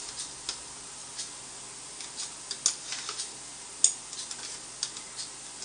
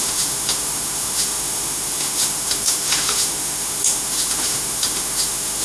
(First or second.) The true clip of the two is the first